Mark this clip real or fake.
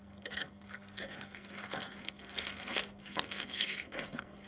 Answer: fake